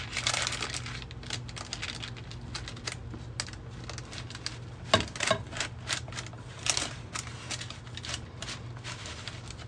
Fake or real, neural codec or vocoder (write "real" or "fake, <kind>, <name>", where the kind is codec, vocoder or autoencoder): real